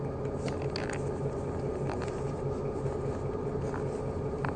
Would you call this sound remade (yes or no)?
no